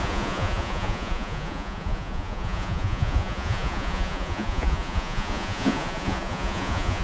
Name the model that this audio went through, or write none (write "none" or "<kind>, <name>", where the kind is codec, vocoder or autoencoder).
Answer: vocoder, Vocos